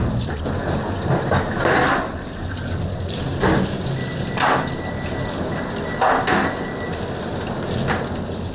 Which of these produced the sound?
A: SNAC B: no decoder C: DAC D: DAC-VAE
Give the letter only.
B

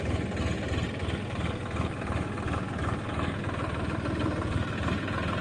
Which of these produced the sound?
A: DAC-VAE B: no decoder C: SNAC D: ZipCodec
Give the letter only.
B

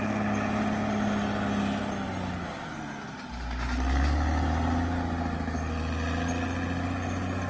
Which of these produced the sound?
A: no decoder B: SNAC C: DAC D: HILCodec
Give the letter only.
A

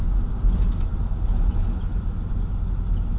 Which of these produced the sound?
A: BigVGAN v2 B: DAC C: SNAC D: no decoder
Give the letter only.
D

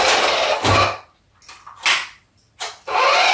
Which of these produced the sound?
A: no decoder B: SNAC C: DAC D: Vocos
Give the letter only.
A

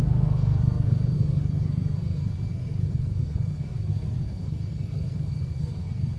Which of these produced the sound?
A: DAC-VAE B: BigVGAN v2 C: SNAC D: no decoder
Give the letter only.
C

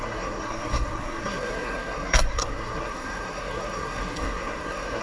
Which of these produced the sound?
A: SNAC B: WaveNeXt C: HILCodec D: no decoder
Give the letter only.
A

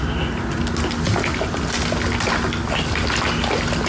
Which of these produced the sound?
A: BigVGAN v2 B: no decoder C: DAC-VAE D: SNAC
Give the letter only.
B